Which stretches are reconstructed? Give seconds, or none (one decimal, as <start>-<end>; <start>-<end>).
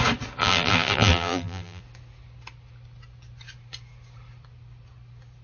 0.4-1.8